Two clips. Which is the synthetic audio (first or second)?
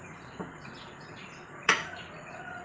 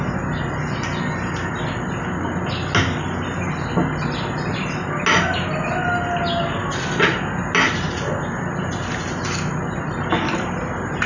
first